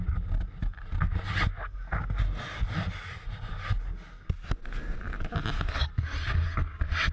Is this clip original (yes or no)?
yes